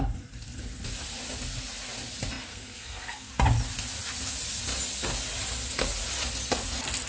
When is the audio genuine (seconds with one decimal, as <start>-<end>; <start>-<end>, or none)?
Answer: 0.0-2.5; 3.3-7.1